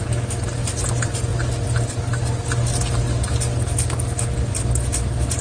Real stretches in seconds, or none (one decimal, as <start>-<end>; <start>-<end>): 0.0-5.4